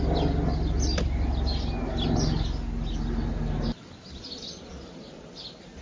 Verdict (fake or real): real